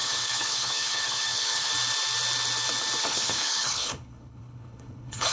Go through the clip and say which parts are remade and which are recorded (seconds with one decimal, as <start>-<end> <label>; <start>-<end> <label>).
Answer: 0.0-1.7 remade; 1.7-3.0 recorded; 3.0-5.3 remade